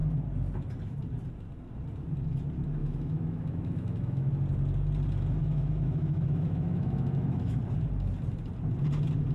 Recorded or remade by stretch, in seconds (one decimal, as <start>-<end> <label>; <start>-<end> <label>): 0.0-2.8 recorded; 2.8-4.3 remade; 4.3-5.4 recorded; 5.4-7.6 remade; 7.6-9.3 recorded